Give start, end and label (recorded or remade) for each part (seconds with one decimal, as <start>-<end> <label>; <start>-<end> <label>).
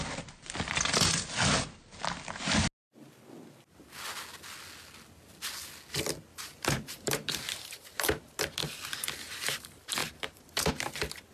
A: 0.0-6.3 recorded; 6.3-8.4 remade; 8.4-10.0 recorded; 10.0-10.7 remade; 10.7-11.3 recorded